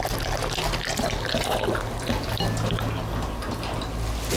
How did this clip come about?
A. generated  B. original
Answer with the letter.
B